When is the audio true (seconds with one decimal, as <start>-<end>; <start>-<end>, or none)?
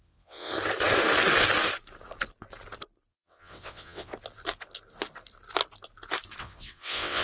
0.5-3.1; 4.1-6.4